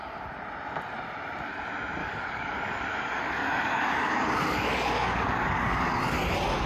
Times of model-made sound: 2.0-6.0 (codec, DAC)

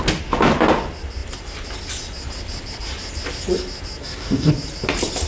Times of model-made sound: 4.0-4.5 (codec, DAC)